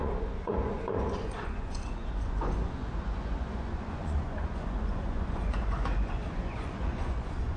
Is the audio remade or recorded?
remade